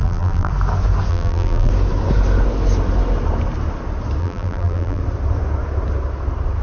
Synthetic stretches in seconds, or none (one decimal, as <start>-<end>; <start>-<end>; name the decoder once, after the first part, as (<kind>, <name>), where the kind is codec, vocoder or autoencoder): 0.0-0.5 (vocoder, BigVGAN v2); 1.1-1.7; 4.2-5.0